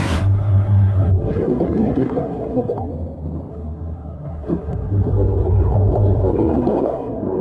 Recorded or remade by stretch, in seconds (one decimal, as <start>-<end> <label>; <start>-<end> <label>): 0.0-2.9 remade; 2.9-3.5 recorded; 3.5-7.4 remade